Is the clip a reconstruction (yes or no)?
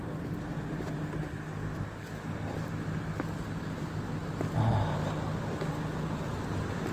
no